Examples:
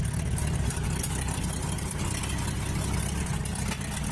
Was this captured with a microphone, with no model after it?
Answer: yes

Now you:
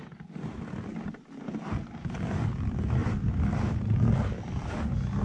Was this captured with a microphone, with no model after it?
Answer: yes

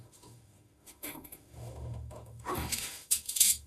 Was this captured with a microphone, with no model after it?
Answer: no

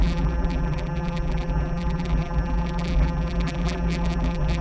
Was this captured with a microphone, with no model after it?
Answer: no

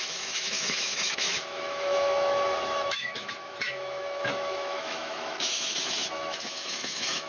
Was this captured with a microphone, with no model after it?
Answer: no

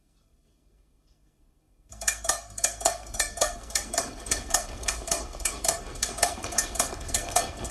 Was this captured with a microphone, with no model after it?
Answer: no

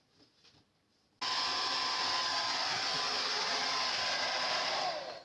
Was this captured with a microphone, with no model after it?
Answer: yes